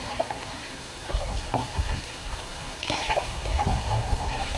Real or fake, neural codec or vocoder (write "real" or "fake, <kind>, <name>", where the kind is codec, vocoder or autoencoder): fake, codec, SNAC